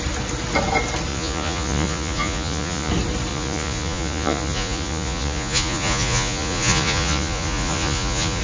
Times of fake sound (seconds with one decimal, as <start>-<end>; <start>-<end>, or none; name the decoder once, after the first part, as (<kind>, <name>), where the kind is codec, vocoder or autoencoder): 1.1-2.9 (vocoder, Vocos); 3.3-8.4